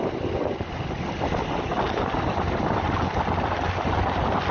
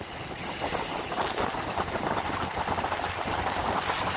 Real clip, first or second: first